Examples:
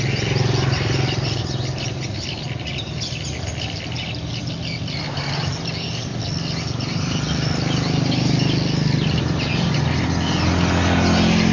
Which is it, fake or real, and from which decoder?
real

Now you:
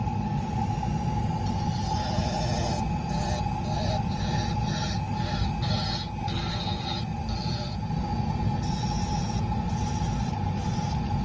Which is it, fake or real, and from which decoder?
real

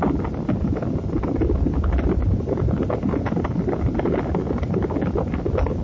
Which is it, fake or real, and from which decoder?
real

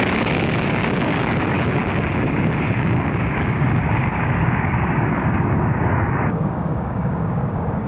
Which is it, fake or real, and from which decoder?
fake, codec, DAC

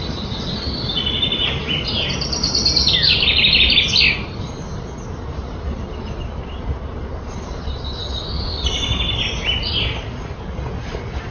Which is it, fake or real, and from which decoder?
real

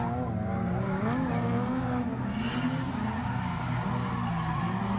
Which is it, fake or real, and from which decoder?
real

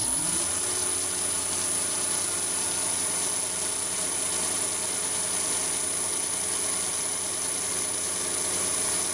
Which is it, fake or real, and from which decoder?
real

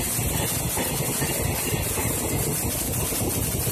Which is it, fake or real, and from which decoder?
real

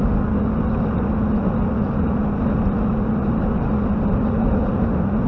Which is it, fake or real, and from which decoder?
real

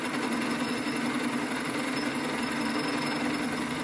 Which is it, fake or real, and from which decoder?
real